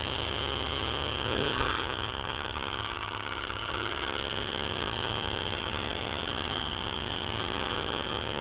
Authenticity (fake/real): fake